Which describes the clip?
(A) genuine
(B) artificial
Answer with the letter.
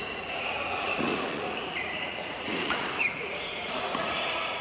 B